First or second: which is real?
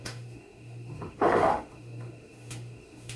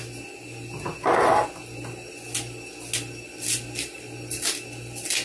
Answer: second